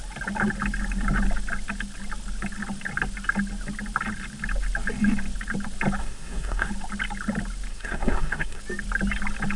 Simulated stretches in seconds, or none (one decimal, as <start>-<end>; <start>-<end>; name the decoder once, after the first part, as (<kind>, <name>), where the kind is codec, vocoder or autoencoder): 6.0-6.7 (codec, SNAC); 7.7-8.6